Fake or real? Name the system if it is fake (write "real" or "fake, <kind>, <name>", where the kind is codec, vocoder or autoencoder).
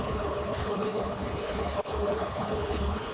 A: fake, codec, HILCodec